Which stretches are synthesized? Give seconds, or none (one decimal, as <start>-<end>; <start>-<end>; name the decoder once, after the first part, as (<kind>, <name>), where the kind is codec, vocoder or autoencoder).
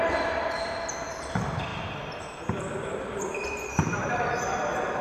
1.7-2.4 (vocoder, BigVGAN v2); 3.7-4.3